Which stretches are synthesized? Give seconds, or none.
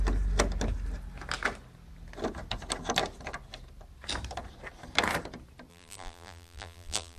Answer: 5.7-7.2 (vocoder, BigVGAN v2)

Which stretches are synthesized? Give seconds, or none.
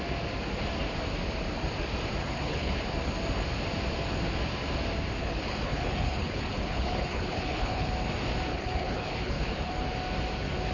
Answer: 2.2-2.7 (codec, HILCodec); 5.2-7.9; 8.5-9.7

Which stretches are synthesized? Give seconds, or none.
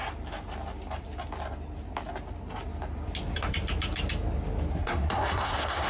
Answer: 4.7-5.9 (codec, SNAC)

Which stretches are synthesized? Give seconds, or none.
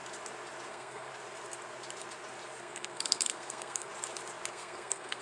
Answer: 0.7-1.1 (codec, SNAC); 2.6-3.9; 4.5-5.2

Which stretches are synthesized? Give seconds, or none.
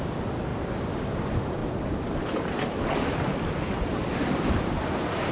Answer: 0.5-1.2 (vocoder, BigVGAN v2); 1.6-4.8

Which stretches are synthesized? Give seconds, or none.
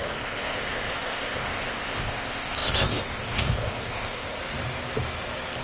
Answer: 0.0-4.4 (codec, ZipCodec)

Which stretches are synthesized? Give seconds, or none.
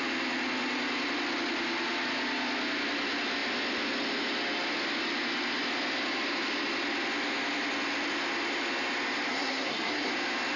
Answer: 9.3-10.1 (codec, SNAC)